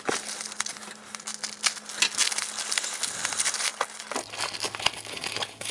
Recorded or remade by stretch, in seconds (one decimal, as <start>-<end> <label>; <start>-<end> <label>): 0.0-5.7 recorded